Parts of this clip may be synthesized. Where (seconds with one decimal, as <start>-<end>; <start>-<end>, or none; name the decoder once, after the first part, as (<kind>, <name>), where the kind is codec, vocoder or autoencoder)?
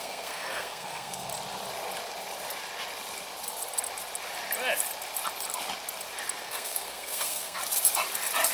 0.0-1.3 (codec, SNAC); 6.4-7.6